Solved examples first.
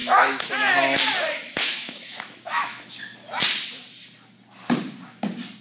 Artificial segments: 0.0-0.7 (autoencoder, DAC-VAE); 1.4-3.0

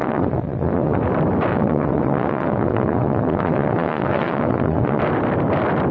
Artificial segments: 0.0-1.0 (vocoder, WaveNeXt); 1.5-5.0

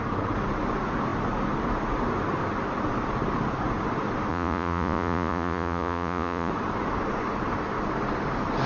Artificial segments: 4.3-6.5 (vocoder, Vocos)

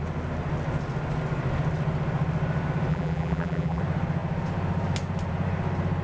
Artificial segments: 2.9-3.8 (vocoder, BigVGAN v2)